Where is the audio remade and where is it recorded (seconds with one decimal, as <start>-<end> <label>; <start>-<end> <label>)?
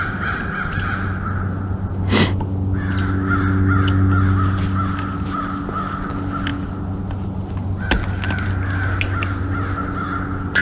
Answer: 0.0-10.6 recorded